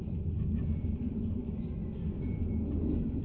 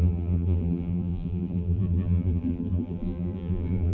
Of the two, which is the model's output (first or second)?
second